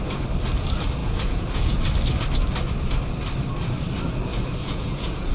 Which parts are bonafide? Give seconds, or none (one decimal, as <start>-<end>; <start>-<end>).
0.0-1.0; 1.8-4.3